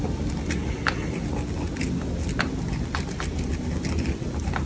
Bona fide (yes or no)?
yes